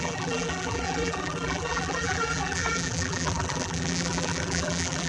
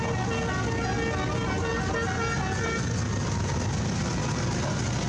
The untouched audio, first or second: second